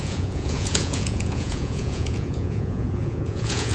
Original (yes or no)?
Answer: no